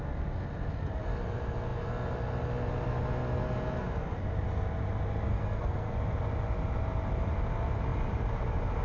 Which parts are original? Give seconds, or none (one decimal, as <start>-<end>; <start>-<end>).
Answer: 0.0-5.3; 5.9-8.8